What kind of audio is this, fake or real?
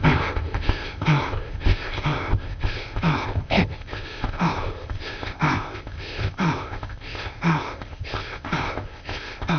fake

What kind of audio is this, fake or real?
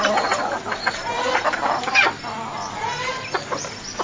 real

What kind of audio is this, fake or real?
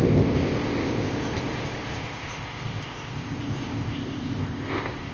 fake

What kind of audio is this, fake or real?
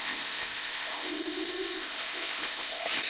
fake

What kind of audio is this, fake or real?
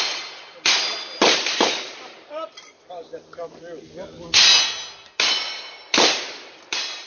real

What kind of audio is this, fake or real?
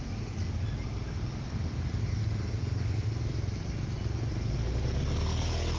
real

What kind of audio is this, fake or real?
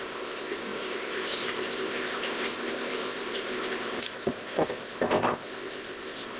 fake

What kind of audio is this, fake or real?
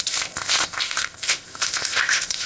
fake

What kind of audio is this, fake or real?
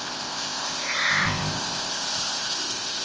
fake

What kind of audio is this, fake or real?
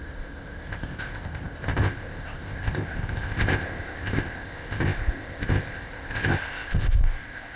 fake